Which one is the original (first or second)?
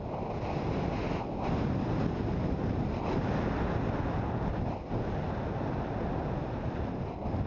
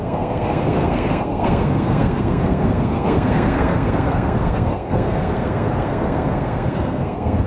first